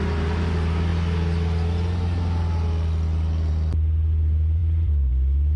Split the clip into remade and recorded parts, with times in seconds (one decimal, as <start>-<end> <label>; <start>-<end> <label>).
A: 0.0-5.6 recorded